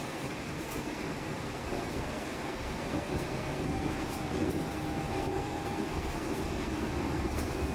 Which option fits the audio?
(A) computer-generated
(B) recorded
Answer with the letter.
A